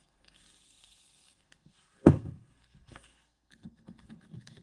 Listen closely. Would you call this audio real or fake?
fake